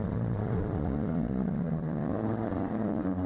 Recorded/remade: remade